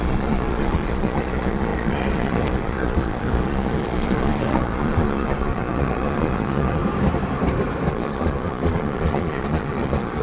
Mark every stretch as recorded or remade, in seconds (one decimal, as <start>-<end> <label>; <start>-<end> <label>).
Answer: 0.0-6.8 remade; 6.8-7.9 recorded; 7.9-10.2 remade